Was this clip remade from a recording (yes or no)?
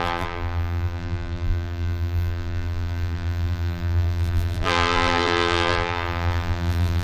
yes